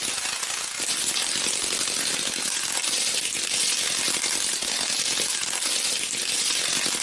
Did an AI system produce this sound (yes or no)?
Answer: no